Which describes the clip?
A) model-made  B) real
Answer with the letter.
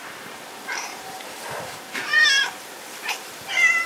A